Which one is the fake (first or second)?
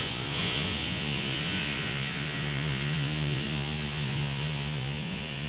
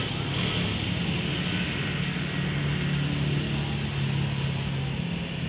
first